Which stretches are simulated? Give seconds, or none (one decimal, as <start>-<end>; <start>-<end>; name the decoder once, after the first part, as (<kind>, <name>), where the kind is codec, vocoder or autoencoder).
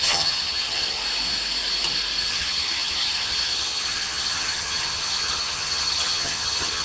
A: 0.0-1.0 (vocoder, HiFi-GAN); 2.3-6.8